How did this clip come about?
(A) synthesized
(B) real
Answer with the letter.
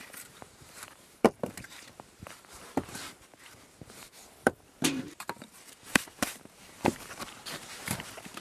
A